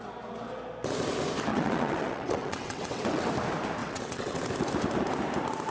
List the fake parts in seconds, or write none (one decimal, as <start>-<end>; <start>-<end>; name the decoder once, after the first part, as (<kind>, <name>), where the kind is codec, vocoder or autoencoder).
1.5-3.3 (vocoder, WaveNeXt); 3.8-4.4